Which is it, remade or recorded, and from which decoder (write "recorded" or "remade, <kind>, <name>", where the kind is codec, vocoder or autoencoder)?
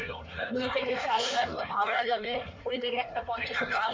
remade, codec, SNAC